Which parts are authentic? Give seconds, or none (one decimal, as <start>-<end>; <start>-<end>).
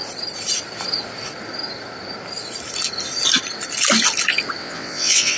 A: 0.0-4.6